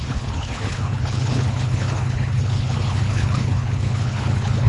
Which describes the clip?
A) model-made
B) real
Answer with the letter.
A